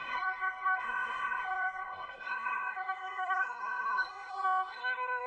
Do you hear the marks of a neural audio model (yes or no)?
yes